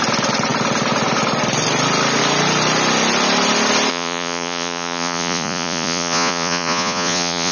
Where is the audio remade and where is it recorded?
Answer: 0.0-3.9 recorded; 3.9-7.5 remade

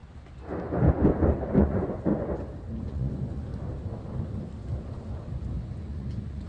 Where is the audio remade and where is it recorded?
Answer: 0.0-1.6 recorded; 1.6-2.1 remade; 2.1-2.8 recorded; 2.8-3.5 remade; 3.5-5.6 recorded; 5.6-6.5 remade

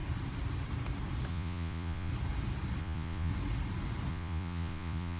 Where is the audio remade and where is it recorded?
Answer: 0.0-1.3 recorded; 1.3-2.1 remade; 2.1-2.8 recorded; 2.8-3.3 remade; 3.3-4.1 recorded; 4.1-5.2 remade

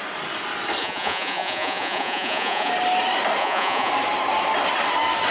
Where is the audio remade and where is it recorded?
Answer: 0.0-0.8 recorded; 0.8-2.7 remade; 2.7-3.4 recorded; 3.4-3.9 remade; 3.9-5.3 recorded